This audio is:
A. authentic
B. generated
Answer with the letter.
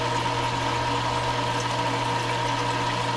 A